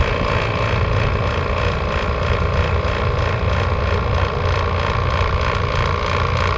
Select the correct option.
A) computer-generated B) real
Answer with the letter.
B